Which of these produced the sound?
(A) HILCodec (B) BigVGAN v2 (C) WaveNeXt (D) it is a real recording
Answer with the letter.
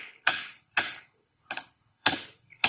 A